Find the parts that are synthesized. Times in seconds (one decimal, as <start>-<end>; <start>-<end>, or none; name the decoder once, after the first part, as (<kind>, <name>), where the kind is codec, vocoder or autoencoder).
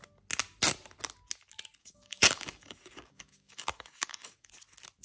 1.8-4.5 (codec, DAC)